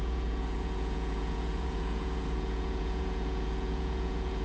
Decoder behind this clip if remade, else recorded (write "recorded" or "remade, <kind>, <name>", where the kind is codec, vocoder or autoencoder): remade, vocoder, Vocos